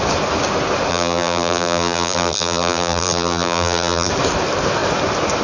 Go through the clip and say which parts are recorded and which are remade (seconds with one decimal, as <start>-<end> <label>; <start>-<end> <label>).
0.0-0.9 recorded; 0.9-4.1 remade; 4.1-5.4 recorded